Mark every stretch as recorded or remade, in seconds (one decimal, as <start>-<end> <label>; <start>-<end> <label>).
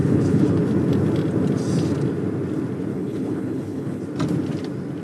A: 0.0-0.6 remade; 0.6-2.9 recorded; 2.9-4.0 remade; 4.0-5.0 recorded